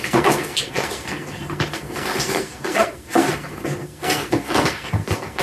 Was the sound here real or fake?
fake